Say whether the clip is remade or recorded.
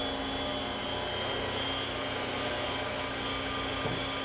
recorded